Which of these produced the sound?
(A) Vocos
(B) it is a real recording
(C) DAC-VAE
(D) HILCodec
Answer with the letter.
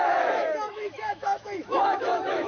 C